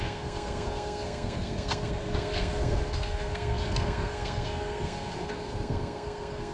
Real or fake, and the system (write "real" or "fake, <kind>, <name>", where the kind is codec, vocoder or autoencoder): fake, codec, SNAC